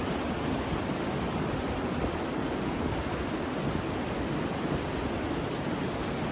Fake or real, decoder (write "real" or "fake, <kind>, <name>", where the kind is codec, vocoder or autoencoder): real